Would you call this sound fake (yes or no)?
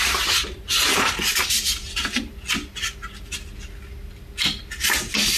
no